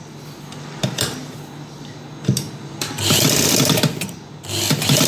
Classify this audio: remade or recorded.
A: recorded